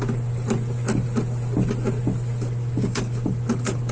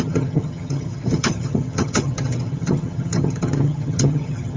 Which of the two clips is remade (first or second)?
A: second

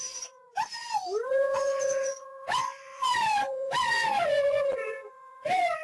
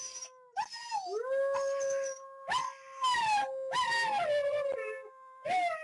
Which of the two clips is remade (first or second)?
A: first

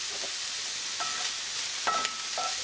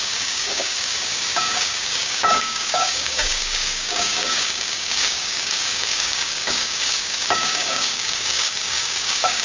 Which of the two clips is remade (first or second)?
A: second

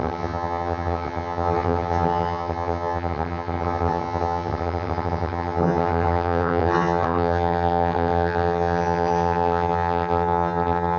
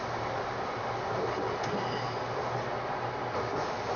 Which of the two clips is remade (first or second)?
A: first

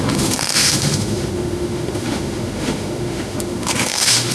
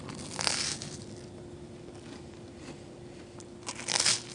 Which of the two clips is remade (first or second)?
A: first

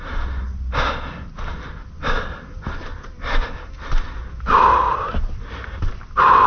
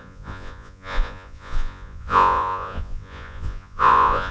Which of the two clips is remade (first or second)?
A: second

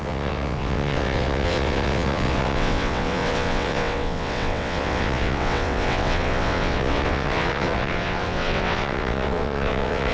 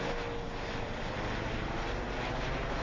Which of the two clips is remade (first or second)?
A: first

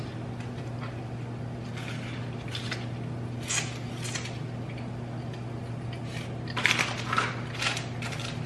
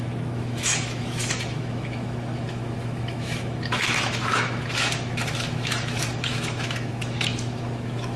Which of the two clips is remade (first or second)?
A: second